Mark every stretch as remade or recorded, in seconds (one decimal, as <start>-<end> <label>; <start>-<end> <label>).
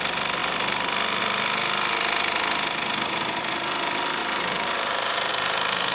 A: 0.0-4.2 recorded; 4.2-5.3 remade; 5.3-5.9 recorded